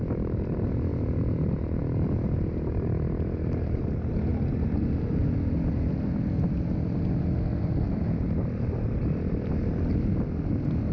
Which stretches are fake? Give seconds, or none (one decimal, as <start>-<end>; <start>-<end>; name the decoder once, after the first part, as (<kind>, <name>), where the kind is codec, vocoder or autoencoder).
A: 0.9-1.8 (vocoder, BigVGAN v2)